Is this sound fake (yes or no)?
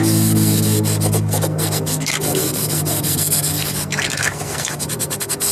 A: yes